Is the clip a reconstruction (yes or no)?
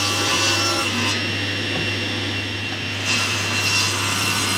no